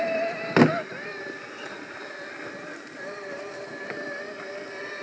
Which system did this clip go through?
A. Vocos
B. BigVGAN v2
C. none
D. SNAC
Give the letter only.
C